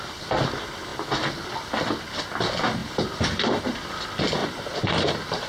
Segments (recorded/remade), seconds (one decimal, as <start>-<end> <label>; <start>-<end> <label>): 0.0-2.8 recorded; 2.8-3.6 remade; 3.6-4.4 recorded; 4.4-5.5 remade